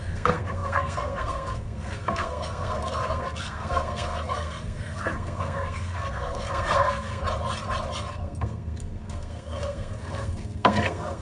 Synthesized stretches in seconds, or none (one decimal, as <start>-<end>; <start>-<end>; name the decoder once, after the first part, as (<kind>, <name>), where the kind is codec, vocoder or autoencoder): 0.0-7.2 (codec, SNAC); 8.1-11.2